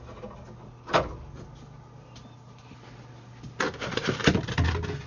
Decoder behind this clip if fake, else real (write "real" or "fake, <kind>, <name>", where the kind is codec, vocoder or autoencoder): real